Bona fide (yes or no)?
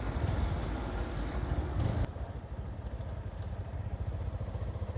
yes